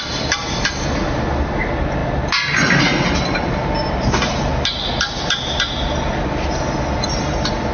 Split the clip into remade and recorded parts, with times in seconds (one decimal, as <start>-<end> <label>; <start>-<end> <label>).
0.0-7.7 recorded